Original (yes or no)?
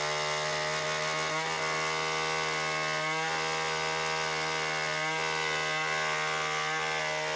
yes